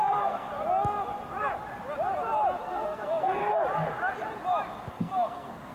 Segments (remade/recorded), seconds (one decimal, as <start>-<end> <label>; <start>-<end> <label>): 0.0-0.5 remade; 0.5-2.6 recorded; 2.6-3.4 remade; 3.4-4.9 recorded; 4.9-5.7 remade